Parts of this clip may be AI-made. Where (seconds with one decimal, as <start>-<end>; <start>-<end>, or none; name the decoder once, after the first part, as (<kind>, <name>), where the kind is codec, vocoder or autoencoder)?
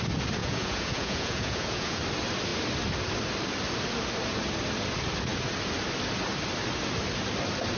0.4-2.0 (vocoder, Vocos)